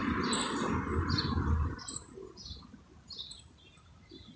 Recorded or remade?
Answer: recorded